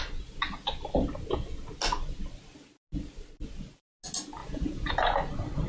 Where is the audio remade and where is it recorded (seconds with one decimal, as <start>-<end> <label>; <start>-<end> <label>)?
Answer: 0.0-4.4 recorded; 4.4-4.9 remade; 4.9-5.7 recorded